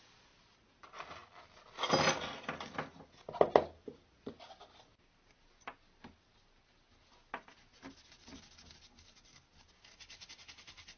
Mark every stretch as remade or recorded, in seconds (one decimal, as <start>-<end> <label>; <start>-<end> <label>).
0.0-11.0 recorded